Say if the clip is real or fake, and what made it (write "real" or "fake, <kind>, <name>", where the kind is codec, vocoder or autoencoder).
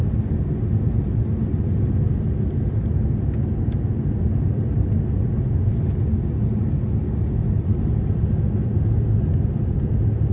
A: real